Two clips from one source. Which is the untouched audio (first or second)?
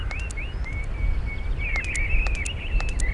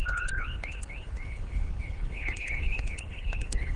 first